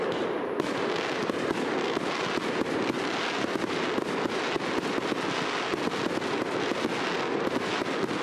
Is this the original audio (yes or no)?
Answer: yes